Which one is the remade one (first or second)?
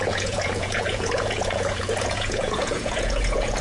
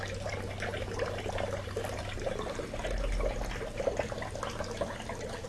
first